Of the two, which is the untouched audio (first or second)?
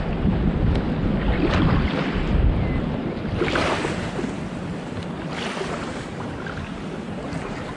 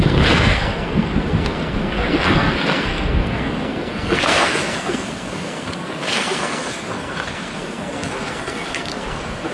first